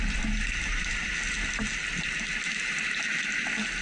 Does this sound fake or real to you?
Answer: real